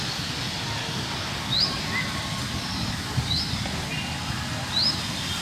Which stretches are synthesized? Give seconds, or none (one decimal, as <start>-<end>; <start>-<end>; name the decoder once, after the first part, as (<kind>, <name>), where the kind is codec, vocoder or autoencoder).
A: 0.8-1.8 (codec, DAC); 2.7-3.4